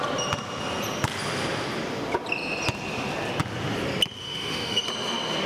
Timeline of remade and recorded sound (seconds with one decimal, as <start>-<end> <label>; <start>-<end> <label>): 0.0-4.2 recorded; 4.2-4.8 remade; 4.8-5.5 recorded

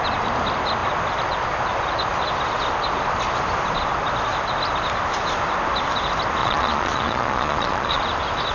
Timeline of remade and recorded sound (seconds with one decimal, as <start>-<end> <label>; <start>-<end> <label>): 0.0-6.4 recorded; 6.4-8.0 remade; 8.0-8.5 recorded

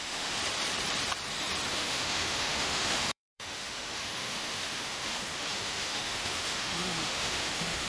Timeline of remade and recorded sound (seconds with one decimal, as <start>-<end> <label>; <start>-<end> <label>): 0.0-0.4 remade; 0.4-1.7 recorded; 1.7-7.9 remade